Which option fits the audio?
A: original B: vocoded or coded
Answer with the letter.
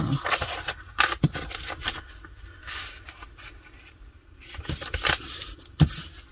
A